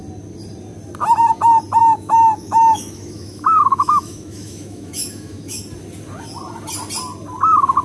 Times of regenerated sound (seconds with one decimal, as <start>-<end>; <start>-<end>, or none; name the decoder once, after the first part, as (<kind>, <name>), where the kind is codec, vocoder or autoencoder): 1.8-5.6 (autoencoder, DAC-VAE)